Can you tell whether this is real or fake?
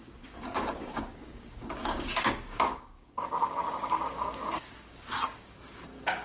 fake